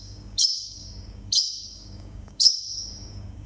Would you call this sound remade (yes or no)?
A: yes